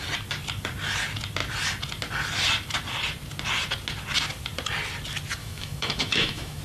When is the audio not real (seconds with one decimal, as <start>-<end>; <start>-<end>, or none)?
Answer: 5.4-6.6